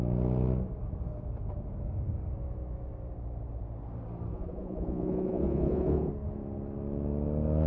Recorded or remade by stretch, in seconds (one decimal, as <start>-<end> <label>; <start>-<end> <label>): 0.0-4.3 recorded; 4.3-6.1 remade; 6.1-7.7 recorded